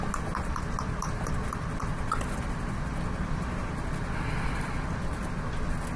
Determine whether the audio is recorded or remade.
recorded